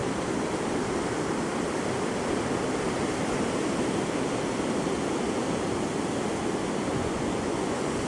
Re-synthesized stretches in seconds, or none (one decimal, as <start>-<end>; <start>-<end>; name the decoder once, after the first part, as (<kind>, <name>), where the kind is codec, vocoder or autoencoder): 6.9-8.1 (vocoder, Vocos)